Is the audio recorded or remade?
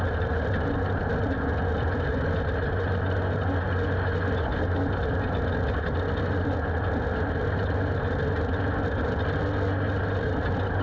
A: recorded